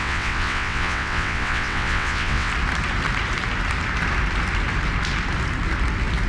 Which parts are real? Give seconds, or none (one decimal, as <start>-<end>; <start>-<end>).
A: 2.5-6.3